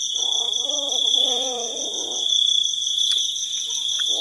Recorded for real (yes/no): no